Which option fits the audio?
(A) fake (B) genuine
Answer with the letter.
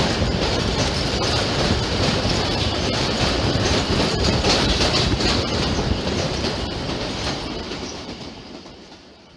A